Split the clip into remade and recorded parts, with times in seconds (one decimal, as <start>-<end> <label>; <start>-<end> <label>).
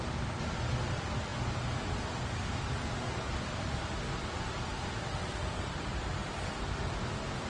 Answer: 0.0-7.5 recorded